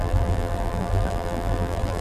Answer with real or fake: fake